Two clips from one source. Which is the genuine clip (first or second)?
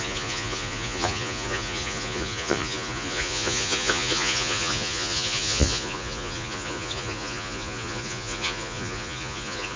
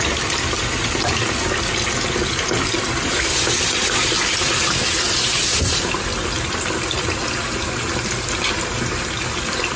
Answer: second